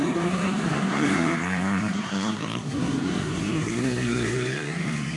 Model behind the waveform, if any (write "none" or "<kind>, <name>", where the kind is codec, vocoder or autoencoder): codec, SNAC